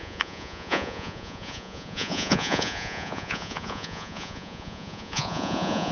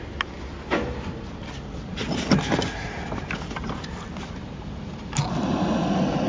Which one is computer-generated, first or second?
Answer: first